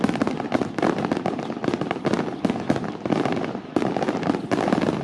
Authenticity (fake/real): real